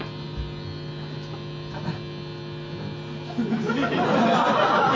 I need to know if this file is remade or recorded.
recorded